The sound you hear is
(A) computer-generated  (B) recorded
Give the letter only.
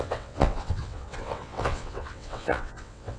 A